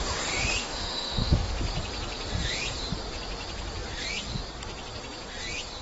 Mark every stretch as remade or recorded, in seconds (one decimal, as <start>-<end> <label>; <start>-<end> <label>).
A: 0.0-0.6 recorded; 0.6-1.5 remade; 1.5-5.8 recorded